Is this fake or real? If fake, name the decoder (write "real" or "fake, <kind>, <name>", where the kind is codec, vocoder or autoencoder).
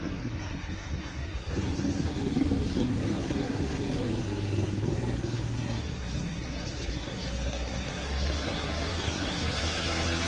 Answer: fake, codec, SNAC